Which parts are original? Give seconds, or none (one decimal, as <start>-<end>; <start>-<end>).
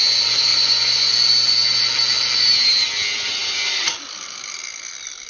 0.0-0.5; 1.1-5.3